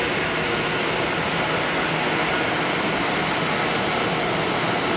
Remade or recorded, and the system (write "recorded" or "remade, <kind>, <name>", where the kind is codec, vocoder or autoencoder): recorded